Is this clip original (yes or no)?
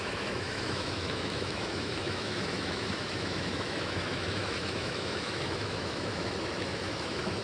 no